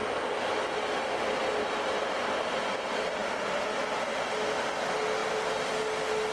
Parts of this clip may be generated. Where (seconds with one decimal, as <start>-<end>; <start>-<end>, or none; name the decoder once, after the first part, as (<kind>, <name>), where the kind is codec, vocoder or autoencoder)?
none